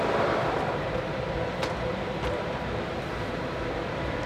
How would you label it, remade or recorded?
remade